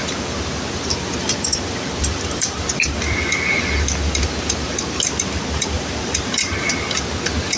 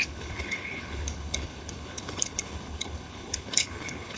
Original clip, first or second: first